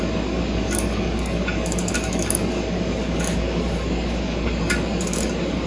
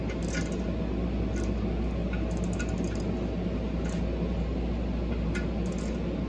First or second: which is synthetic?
first